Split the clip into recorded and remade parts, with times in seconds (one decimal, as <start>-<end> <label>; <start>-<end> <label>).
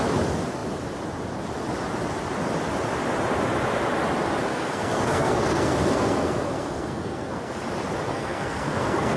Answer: 0.0-4.5 recorded; 4.5-7.6 remade; 7.6-8.1 recorded; 8.1-9.2 remade